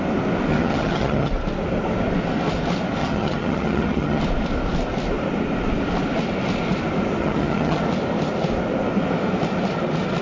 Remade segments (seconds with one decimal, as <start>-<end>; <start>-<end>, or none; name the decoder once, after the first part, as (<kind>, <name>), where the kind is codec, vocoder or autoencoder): 0.5-1.3 (vocoder, HiFi-GAN); 3.0-4.2; 7.2-7.8